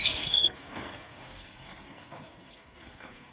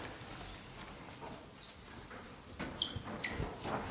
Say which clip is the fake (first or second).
first